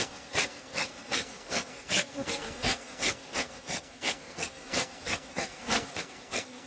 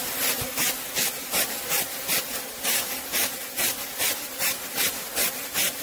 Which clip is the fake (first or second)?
first